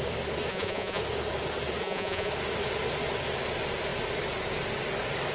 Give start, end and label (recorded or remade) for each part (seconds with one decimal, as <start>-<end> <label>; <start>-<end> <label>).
0.0-0.5 recorded; 0.5-1.0 remade; 1.0-1.8 recorded; 1.8-2.3 remade; 2.3-5.3 recorded